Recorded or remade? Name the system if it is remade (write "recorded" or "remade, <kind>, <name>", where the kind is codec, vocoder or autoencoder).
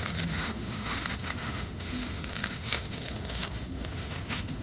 remade, autoencoder, DAC-VAE